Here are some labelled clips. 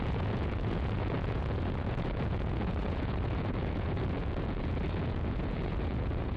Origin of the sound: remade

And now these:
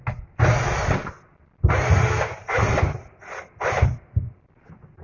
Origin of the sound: recorded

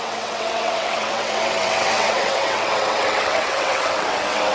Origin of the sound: remade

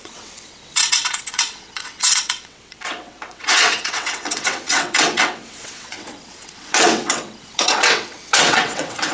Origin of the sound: remade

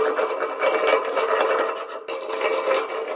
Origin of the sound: recorded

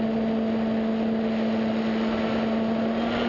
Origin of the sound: recorded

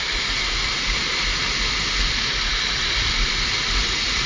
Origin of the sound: recorded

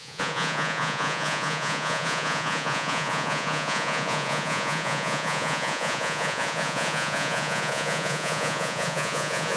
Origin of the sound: remade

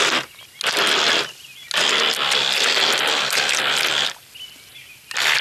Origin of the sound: recorded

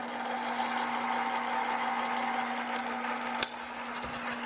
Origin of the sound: recorded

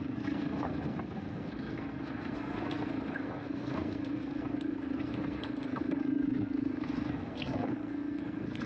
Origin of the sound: remade